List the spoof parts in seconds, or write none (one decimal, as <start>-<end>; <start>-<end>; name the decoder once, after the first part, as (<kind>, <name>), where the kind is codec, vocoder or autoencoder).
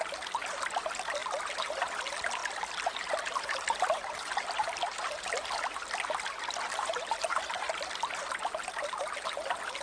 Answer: none